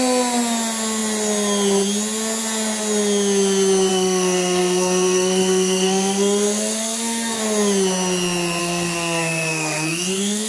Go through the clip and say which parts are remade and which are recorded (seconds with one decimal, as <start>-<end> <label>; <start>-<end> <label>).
0.0-3.9 recorded; 3.9-7.4 remade; 7.4-8.6 recorded; 8.6-10.5 remade